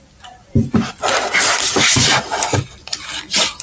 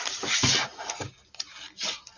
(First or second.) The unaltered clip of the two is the second